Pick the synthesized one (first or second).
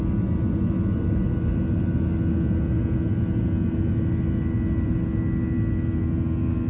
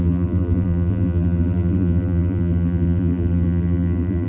second